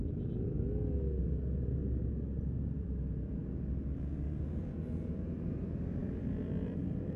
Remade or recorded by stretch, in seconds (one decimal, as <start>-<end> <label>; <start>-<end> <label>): 0.0-1.2 recorded; 1.2-1.8 remade; 1.8-2.8 recorded; 2.8-3.4 remade; 3.4-4.6 recorded; 4.6-7.2 remade